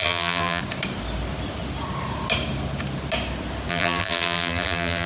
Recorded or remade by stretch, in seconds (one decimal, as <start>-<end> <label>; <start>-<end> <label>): 0.0-0.6 remade; 0.6-3.7 recorded; 3.7-5.1 remade